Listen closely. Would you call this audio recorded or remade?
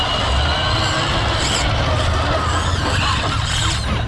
recorded